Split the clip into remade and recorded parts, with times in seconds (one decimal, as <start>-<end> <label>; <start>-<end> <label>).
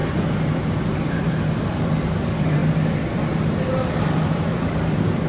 0.0-2.6 remade; 2.6-4.0 recorded; 4.0-5.3 remade